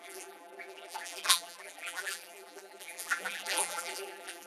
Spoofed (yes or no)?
yes